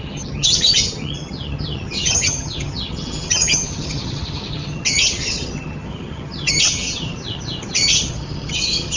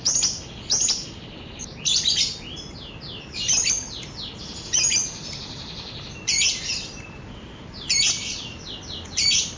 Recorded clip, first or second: second